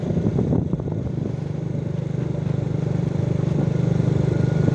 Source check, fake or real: fake